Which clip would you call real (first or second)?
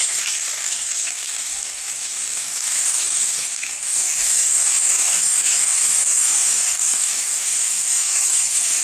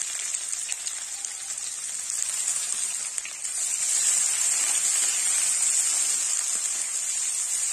second